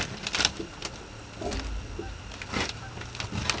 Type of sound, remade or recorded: recorded